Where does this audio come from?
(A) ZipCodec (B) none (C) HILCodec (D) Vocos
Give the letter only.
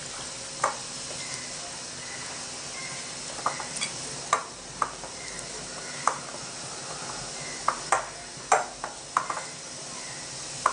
B